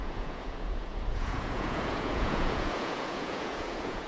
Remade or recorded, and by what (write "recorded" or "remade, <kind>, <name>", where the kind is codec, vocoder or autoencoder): remade, vocoder, Vocos